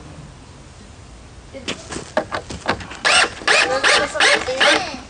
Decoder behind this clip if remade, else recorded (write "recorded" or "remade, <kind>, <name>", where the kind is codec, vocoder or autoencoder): recorded